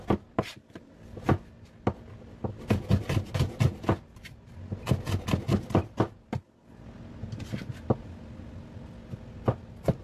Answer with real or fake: real